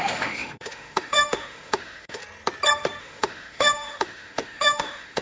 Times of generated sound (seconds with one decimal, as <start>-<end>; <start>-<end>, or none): 0.0-2.2; 3.0-5.2